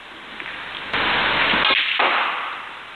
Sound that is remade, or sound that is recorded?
recorded